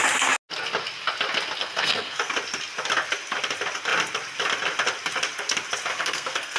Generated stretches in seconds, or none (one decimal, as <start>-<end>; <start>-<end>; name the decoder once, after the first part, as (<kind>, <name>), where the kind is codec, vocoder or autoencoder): 1.6-2.3 (codec, SNAC); 5.9-6.6